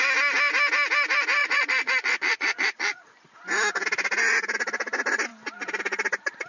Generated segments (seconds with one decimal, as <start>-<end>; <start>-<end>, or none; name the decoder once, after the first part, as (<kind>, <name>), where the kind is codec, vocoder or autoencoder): 1.4-3.0 (vocoder, Vocos)